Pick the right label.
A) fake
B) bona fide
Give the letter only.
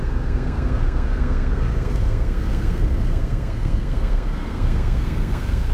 A